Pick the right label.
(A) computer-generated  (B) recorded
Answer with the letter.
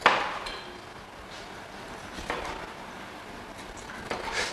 B